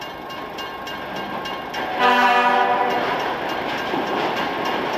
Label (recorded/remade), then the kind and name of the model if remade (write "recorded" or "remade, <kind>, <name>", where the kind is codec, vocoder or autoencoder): recorded